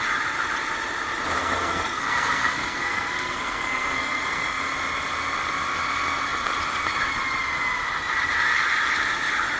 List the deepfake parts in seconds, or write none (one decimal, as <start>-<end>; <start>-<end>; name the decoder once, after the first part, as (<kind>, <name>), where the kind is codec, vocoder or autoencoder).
1.4-4.6 (codec, SNAC)